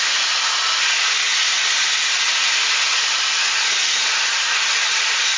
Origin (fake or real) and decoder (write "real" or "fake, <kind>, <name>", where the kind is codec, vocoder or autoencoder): real